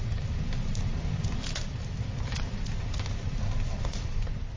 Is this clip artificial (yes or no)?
no